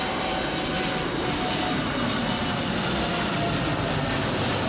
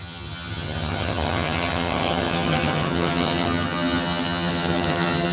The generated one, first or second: second